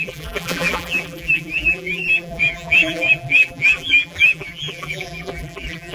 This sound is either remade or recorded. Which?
remade